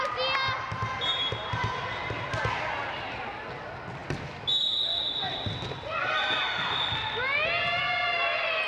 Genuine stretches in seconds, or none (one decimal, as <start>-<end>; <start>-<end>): 0.0-8.7